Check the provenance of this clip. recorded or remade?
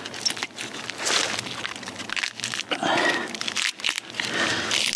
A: recorded